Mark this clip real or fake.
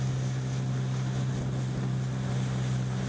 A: real